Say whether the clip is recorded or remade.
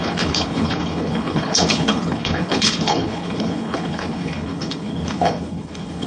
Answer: remade